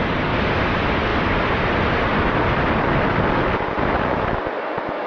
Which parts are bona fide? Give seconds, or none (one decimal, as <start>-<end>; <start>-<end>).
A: 0.0-5.1